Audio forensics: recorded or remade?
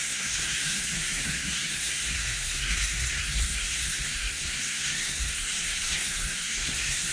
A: remade